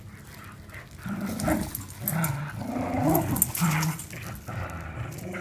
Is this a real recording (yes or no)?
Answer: yes